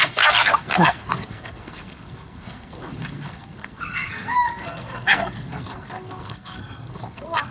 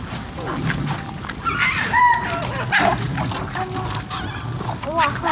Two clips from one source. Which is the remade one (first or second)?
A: first